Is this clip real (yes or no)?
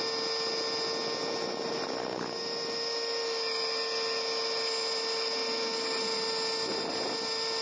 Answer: yes